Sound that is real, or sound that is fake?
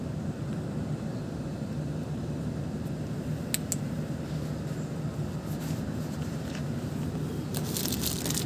real